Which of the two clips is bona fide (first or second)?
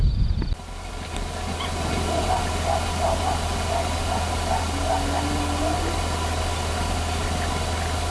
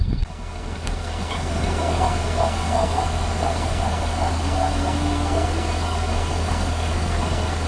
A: first